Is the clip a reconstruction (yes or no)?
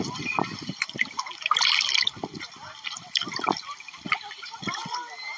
no